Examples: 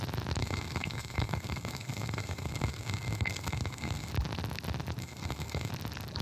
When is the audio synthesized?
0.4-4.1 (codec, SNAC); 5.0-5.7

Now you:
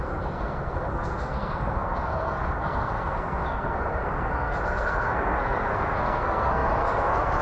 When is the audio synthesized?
0.0-7.4 (codec, SNAC)

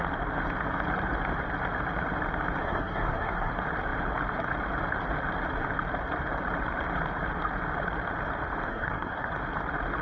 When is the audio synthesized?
2.6-3.5 (codec, SNAC); 8.7-9.3